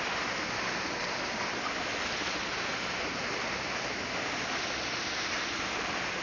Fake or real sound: real